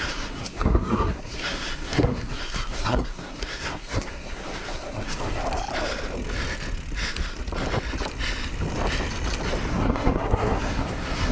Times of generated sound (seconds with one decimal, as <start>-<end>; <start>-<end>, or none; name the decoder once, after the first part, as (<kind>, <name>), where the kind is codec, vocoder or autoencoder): 0.0-5.4 (codec, SNAC); 9.7-11.3